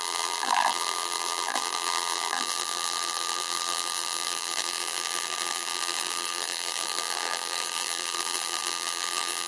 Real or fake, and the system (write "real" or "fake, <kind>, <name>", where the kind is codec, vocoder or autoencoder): fake, vocoder, BigVGAN v2